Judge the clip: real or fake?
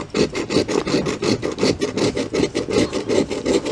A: real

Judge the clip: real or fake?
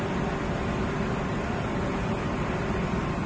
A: real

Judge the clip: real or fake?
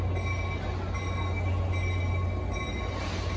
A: real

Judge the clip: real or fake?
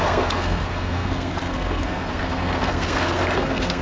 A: fake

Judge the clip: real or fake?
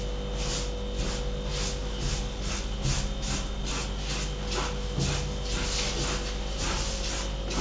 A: real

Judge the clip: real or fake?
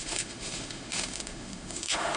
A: fake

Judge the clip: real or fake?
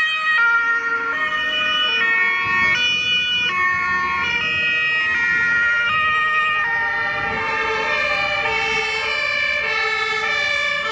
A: real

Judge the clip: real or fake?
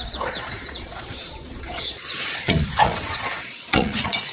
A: fake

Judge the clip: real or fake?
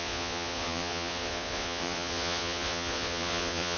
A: fake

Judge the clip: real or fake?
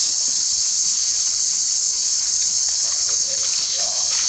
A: fake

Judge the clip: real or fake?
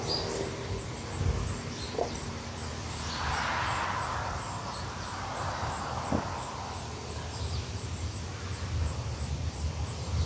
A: real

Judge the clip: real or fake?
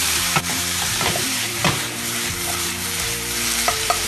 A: fake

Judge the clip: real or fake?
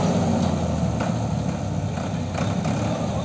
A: real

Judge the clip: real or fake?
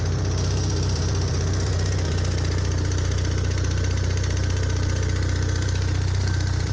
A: fake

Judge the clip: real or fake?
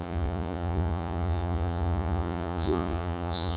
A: fake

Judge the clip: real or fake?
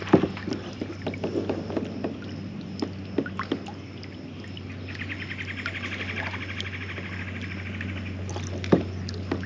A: real